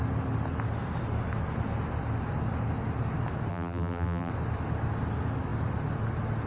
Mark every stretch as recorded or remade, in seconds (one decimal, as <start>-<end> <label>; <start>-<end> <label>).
0.0-3.5 recorded; 3.5-4.3 remade; 4.3-6.5 recorded